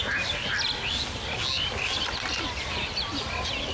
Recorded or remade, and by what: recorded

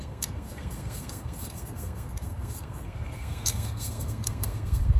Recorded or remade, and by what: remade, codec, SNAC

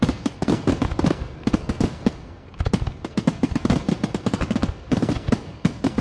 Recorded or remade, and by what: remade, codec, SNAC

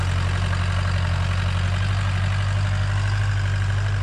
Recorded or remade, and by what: recorded